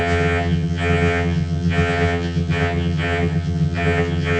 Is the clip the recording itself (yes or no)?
no